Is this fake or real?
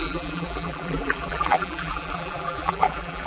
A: fake